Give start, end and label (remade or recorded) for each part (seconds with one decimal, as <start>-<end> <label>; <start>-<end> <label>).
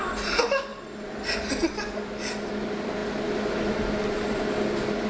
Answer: 0.0-5.1 recorded